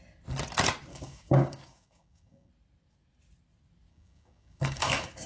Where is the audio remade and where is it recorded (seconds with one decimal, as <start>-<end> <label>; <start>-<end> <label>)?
0.0-0.9 recorded; 0.9-2.5 remade; 2.5-3.9 recorded; 3.9-5.3 remade